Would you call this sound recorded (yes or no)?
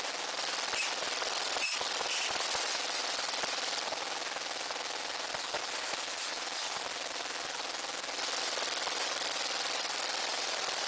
yes